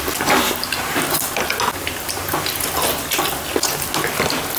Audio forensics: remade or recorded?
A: recorded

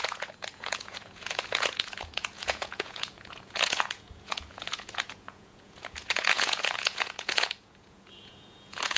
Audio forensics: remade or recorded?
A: remade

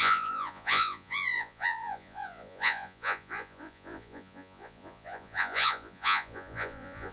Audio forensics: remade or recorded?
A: remade